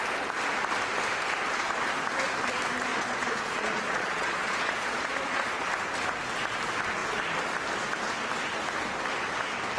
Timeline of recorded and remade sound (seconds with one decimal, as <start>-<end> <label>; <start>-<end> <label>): 0.0-2.9 recorded; 2.9-5.7 remade; 5.7-9.8 recorded